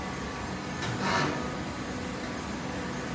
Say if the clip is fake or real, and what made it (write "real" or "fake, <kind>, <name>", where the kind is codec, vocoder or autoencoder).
real